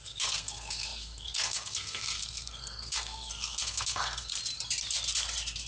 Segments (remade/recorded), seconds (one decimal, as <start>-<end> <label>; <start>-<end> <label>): 0.0-4.3 remade; 4.3-5.7 recorded